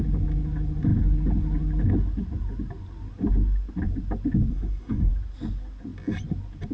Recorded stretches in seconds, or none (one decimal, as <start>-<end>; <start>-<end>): 0.0-4.5; 5.1-6.7